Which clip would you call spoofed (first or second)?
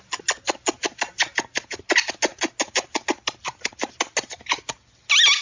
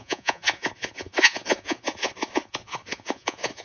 second